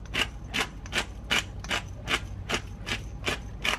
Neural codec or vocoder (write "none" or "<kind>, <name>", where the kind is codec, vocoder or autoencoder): none